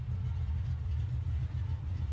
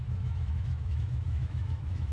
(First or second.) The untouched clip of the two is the first